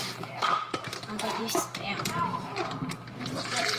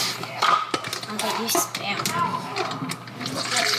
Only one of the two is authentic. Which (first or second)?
second